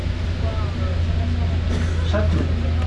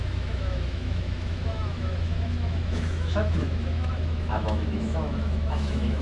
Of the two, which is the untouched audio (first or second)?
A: first